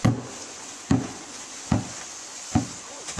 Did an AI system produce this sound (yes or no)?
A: yes